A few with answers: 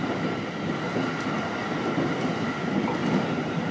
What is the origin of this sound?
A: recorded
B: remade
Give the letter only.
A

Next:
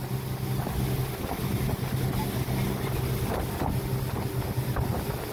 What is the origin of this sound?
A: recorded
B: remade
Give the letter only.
A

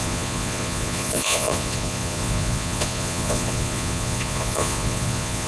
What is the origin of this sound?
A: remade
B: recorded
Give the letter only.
A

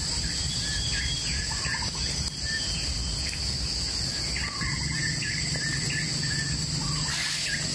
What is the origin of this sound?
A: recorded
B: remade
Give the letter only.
A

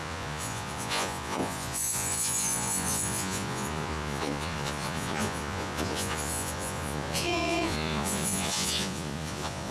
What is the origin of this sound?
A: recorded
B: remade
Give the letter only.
B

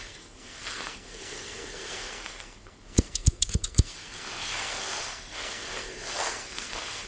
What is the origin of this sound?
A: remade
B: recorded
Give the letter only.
A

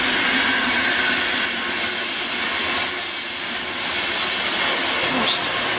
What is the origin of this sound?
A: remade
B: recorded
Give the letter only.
B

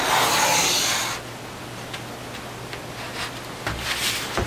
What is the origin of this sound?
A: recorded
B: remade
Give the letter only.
A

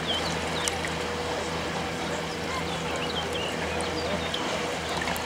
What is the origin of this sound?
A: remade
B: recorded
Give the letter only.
B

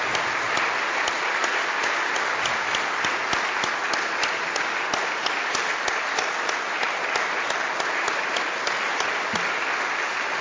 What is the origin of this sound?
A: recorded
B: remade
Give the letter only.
A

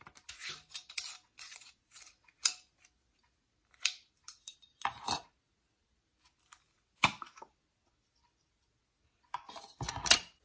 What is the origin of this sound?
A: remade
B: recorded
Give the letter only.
B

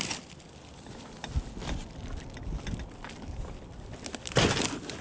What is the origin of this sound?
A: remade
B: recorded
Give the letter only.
B